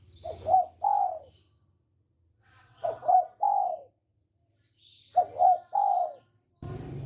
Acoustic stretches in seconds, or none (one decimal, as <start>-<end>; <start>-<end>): 0.0-2.4; 3.1-7.1